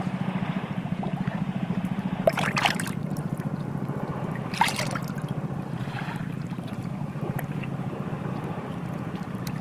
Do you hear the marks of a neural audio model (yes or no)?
yes